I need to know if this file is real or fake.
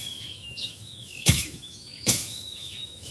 fake